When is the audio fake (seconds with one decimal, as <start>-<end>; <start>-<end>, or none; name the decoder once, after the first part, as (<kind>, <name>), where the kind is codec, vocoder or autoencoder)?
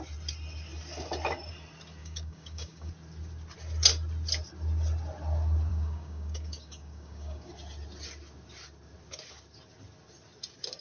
2.0-2.9 (codec, DAC); 5.7-7.5